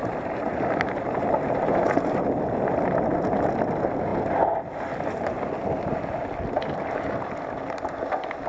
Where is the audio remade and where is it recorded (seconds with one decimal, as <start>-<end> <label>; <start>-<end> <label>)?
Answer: 0.0-2.4 remade; 2.4-8.5 recorded